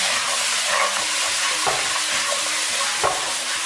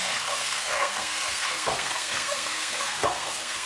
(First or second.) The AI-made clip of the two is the second